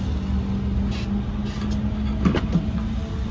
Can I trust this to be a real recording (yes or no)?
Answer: yes